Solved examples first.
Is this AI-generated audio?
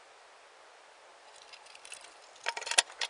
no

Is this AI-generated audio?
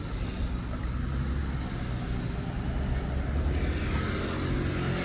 no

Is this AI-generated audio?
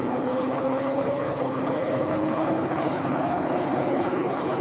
yes